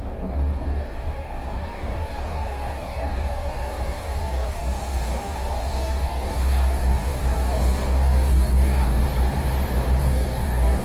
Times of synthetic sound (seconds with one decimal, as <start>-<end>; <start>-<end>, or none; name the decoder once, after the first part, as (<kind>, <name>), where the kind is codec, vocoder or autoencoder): 0.0-9.0 (codec, DAC); 10.0-10.8